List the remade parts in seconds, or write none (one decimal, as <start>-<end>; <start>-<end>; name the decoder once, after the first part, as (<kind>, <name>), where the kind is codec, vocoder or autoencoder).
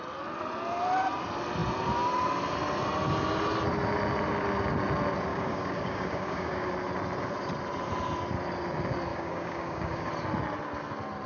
5.3-6.7 (codec, DAC); 9.1-10.1